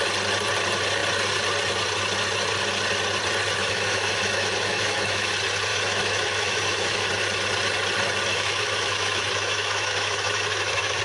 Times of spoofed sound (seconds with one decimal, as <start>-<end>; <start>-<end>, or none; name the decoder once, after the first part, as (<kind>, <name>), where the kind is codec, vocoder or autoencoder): 3.6-5.3 (autoencoder, DAC-VAE); 5.7-7.1; 8.3-11.0